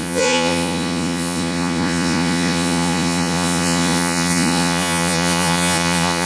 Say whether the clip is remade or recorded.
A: remade